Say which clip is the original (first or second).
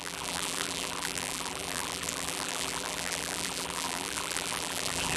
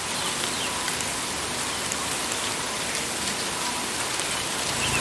second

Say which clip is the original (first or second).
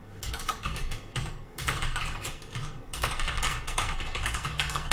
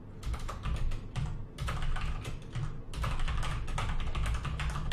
second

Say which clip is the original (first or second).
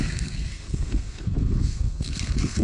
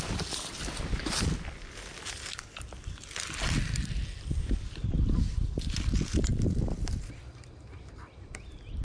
second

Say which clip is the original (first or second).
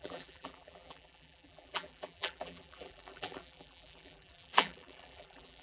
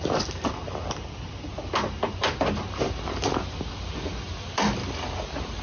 second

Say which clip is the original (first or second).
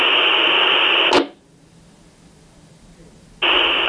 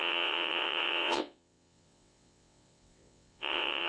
first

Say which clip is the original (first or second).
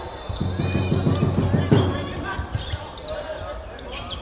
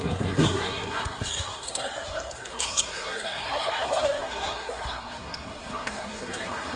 first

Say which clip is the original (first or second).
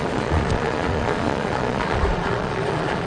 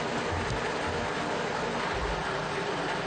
second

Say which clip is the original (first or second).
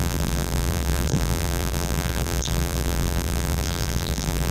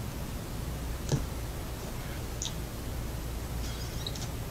second